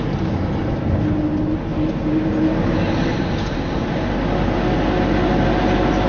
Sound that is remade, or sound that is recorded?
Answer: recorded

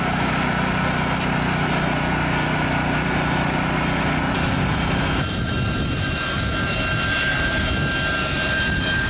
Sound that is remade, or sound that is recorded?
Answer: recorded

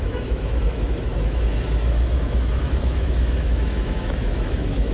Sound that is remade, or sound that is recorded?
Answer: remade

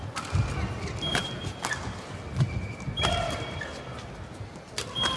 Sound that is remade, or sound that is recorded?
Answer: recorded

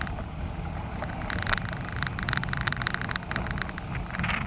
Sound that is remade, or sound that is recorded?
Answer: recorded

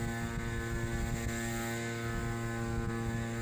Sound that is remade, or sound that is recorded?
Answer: recorded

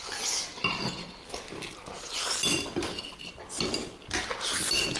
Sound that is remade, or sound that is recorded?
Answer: recorded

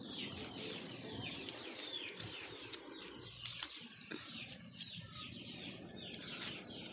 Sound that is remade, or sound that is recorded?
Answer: remade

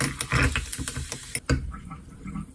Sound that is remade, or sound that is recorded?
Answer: recorded